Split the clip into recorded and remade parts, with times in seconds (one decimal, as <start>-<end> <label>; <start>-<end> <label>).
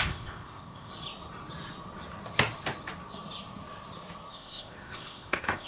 0.0-0.9 remade; 0.9-4.3 recorded; 4.3-5.7 remade